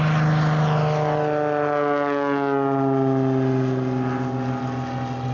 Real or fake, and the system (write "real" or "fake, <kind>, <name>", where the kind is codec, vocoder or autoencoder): real